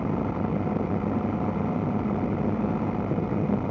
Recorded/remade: recorded